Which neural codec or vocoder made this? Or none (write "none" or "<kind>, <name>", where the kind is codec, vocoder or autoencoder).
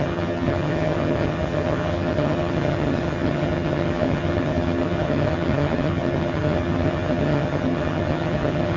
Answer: vocoder, HiFi-GAN